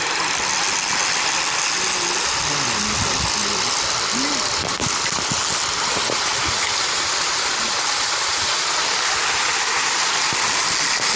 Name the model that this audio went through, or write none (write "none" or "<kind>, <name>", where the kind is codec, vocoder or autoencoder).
none